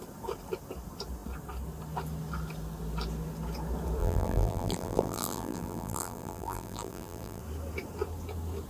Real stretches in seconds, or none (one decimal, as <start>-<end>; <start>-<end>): 0.0-4.0; 7.4-8.7